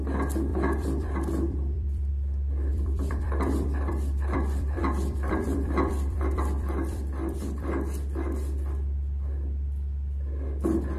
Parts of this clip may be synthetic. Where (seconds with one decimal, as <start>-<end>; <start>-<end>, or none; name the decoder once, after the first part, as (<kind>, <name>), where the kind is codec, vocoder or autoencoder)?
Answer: 0.5-2.1 (vocoder, BigVGAN v2); 2.7-7.7